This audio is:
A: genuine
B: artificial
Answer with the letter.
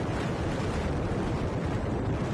B